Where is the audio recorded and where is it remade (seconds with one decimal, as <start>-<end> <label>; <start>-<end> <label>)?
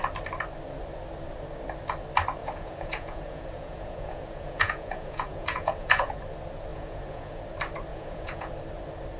0.0-2.4 recorded; 2.4-6.1 remade; 6.1-6.7 recorded; 6.7-7.4 remade; 7.4-7.9 recorded; 7.9-8.5 remade; 8.5-9.2 recorded